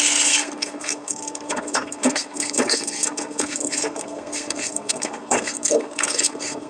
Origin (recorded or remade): remade